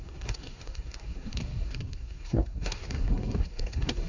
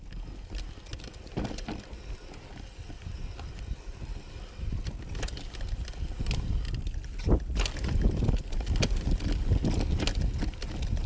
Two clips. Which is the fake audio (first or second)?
first